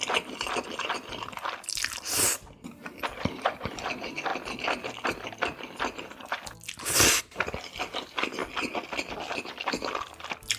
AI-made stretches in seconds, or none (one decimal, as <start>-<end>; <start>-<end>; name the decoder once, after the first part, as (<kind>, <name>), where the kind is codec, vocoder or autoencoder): 0.0-4.3 (vocoder, BigVGAN v2); 7.2-8.4; 8.9-10.6